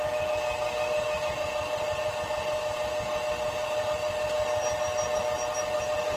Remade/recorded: recorded